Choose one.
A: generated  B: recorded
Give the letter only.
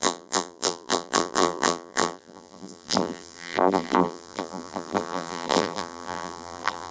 A